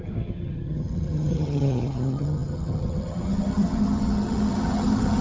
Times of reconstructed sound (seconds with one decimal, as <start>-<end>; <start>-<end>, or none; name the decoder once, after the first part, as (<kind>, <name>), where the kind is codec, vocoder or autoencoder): 0.0-5.2 (vocoder, HiFi-GAN)